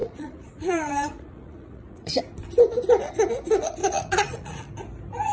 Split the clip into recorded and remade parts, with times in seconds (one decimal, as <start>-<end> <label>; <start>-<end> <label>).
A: 0.0-2.2 remade; 2.2-3.8 recorded; 3.8-4.6 remade; 4.6-5.3 recorded